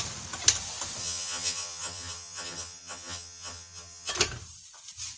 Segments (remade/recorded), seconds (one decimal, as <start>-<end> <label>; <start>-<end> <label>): 0.0-1.0 recorded; 1.0-4.1 remade; 4.1-5.2 recorded